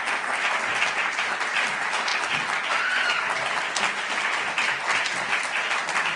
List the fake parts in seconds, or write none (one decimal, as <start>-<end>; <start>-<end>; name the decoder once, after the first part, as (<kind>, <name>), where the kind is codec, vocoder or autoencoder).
none